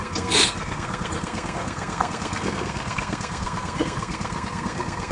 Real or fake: fake